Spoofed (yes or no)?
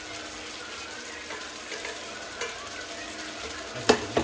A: no